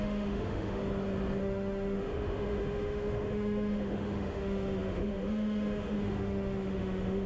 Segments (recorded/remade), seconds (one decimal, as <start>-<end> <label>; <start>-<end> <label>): 0.0-0.8 remade; 0.8-1.4 recorded; 1.4-7.3 remade